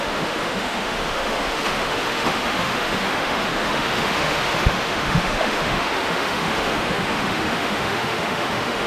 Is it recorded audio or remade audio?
remade